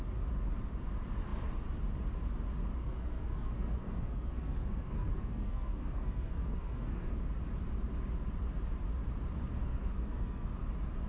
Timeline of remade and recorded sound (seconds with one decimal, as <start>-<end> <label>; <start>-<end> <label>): 0.0-2.8 recorded; 2.8-7.2 remade; 7.2-9.6 recorded; 9.6-10.5 remade; 10.5-11.1 recorded